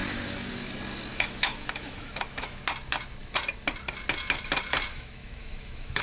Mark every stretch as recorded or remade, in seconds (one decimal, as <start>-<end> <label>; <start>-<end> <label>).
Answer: 0.0-1.1 recorded; 1.1-2.6 remade; 2.6-4.9 recorded; 4.9-6.0 remade